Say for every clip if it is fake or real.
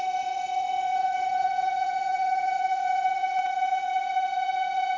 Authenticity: fake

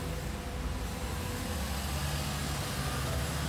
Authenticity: real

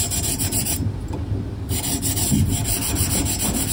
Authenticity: real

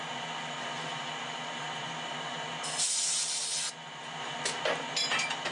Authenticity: real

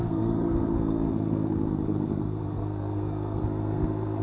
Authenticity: fake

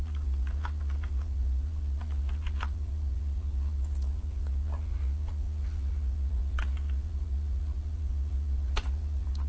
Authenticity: fake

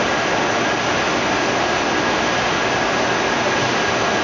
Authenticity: real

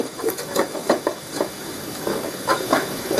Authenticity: fake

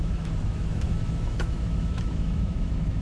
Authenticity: fake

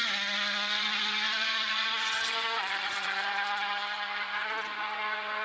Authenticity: fake